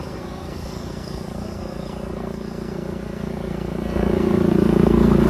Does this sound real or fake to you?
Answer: fake